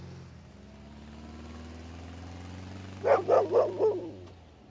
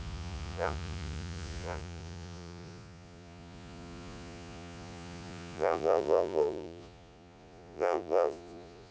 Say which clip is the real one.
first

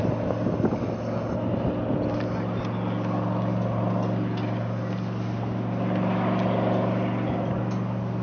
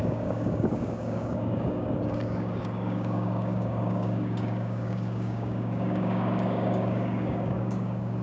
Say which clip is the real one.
first